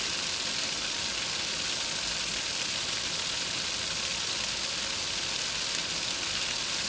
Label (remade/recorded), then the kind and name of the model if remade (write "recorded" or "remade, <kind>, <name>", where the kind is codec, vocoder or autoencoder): recorded